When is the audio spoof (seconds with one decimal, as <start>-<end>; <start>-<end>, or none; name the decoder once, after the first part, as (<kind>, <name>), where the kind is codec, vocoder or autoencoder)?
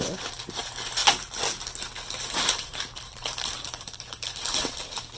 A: 0.0-1.0 (vocoder, BigVGAN v2); 2.2-5.2